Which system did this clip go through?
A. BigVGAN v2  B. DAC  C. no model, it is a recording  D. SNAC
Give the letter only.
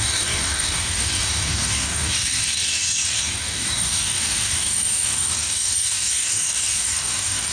B